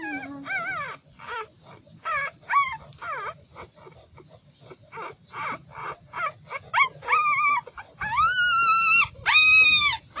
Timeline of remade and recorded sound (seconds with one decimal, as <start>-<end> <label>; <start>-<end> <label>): 0.0-10.2 recorded